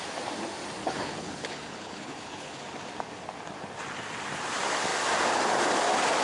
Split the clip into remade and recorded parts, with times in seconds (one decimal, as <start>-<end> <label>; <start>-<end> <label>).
0.0-0.8 recorded; 0.8-2.6 remade; 2.6-6.2 recorded